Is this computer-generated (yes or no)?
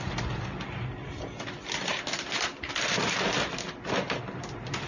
no